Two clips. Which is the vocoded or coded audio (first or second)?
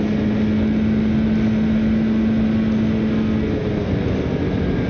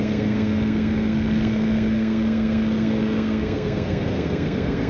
second